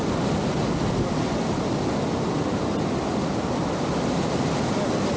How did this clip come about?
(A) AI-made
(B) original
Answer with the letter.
B